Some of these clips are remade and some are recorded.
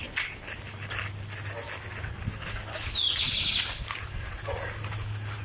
recorded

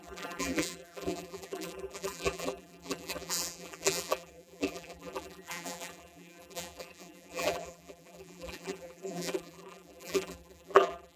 remade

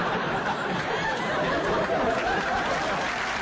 recorded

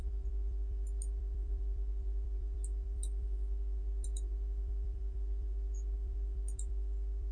remade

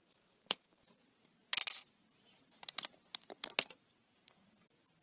remade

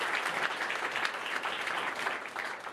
recorded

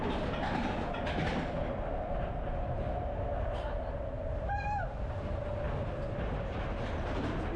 recorded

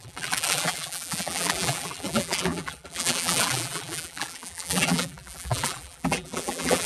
remade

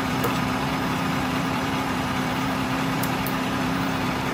remade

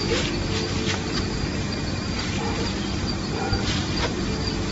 recorded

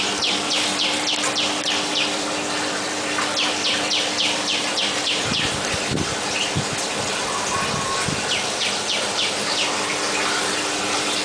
remade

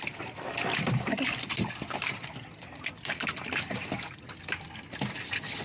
remade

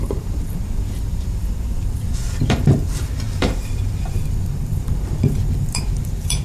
remade